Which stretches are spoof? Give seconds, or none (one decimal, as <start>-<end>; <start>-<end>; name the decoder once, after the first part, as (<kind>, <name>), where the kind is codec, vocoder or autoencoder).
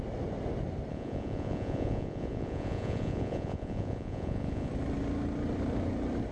0.9-4.7 (vocoder, Vocos)